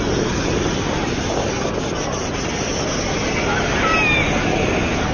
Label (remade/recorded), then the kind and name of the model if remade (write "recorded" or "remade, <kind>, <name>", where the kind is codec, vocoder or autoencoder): recorded